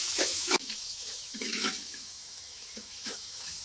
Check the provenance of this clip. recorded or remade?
remade